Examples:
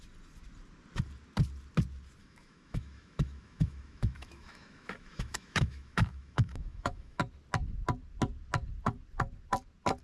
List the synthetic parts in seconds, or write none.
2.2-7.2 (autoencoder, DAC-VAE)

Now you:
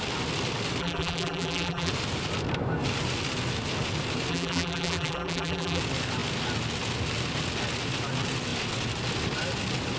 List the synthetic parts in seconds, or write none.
0.8-1.9 (vocoder, BigVGAN v2); 4.3-5.8